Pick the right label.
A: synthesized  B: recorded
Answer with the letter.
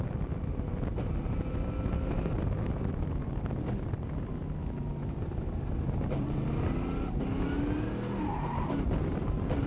B